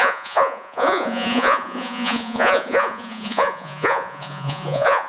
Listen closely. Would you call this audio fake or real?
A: fake